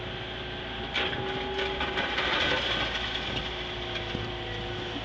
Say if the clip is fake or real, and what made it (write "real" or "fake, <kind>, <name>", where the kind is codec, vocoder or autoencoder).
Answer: real